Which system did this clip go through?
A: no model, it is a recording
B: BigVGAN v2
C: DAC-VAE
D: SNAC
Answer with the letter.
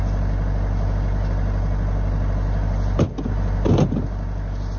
A